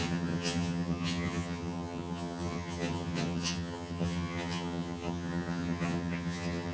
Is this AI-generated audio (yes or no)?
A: yes